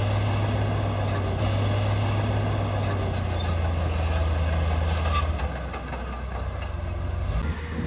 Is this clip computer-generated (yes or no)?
no